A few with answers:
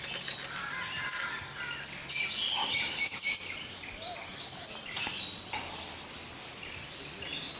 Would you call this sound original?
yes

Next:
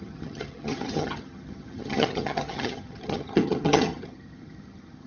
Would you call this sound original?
no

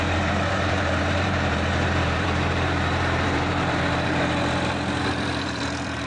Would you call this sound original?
no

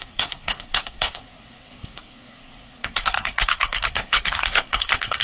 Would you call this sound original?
no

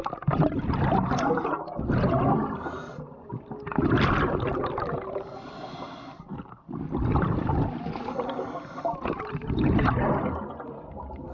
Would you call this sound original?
yes